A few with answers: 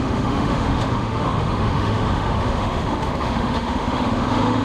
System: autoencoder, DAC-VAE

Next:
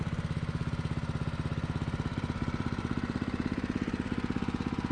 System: vocoder, BigVGAN v2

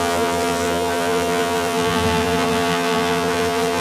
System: vocoder, BigVGAN v2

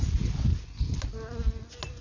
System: none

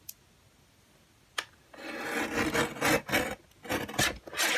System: none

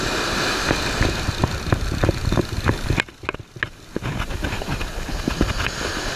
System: none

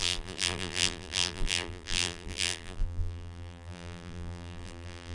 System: vocoder, BigVGAN v2